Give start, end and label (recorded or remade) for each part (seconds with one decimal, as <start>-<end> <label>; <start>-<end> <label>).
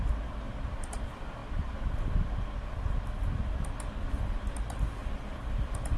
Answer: 0.0-5.0 recorded; 5.0-5.6 remade; 5.6-6.0 recorded